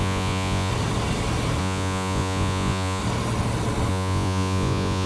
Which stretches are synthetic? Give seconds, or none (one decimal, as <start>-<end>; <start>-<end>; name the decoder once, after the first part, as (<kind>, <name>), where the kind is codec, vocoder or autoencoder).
0.0-0.7 (vocoder, Vocos); 1.6-3.0; 3.9-5.1